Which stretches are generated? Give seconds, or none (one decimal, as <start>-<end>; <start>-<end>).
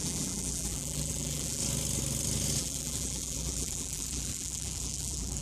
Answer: 0.0-1.6; 2.6-5.4